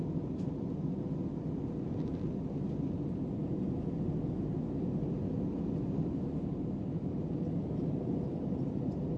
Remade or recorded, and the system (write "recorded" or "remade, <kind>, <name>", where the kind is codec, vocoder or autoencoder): recorded